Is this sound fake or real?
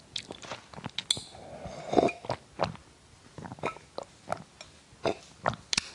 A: real